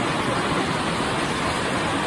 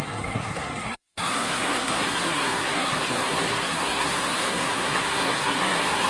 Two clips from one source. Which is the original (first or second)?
first